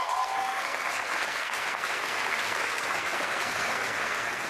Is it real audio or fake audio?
fake